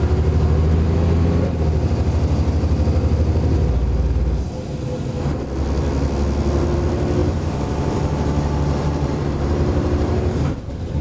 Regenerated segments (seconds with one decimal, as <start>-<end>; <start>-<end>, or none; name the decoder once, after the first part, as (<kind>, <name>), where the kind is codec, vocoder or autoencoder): 7.2-11.0 (vocoder, BigVGAN v2)